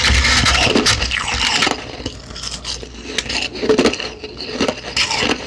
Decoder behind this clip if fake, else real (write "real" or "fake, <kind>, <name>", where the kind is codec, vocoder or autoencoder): real